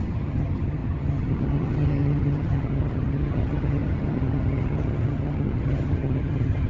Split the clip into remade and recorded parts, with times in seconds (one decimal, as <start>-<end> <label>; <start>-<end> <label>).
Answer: 0.0-6.7 remade